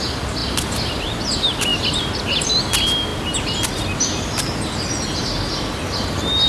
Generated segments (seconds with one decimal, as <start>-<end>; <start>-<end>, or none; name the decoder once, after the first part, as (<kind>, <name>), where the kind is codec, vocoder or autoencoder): none